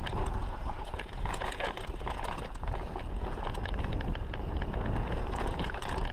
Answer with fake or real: fake